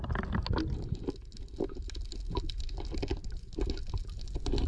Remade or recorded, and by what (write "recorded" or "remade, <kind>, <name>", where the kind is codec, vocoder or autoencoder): recorded